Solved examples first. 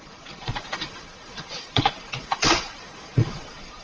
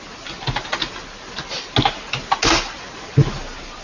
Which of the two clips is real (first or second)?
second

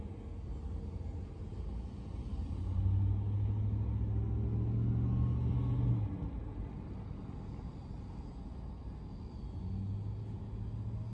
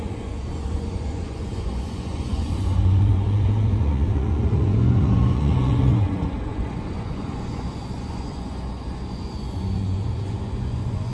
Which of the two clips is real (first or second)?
first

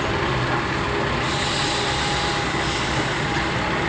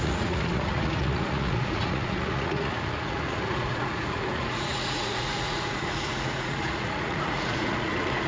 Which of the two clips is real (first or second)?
first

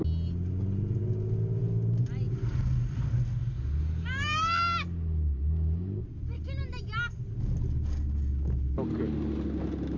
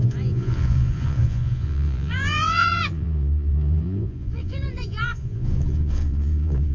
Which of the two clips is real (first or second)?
first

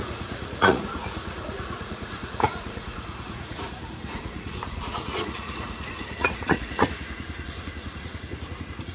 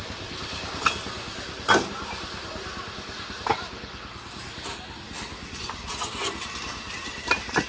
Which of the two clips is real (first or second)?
second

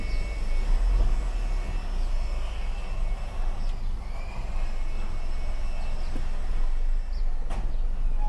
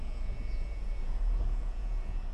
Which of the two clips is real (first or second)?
first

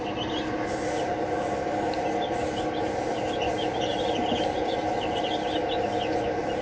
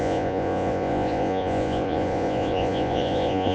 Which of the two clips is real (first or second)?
first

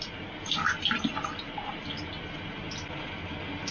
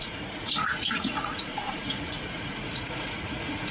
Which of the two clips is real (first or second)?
first